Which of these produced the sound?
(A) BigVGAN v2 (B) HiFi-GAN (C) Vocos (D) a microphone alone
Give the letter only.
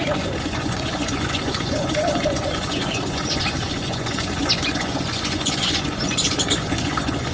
C